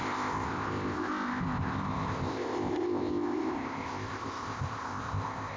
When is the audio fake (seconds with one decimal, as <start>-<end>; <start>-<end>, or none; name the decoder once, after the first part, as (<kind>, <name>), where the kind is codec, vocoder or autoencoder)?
0.0-5.6 (codec, ZipCodec)